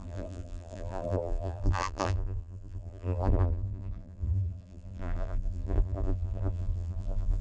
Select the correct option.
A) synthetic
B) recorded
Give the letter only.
A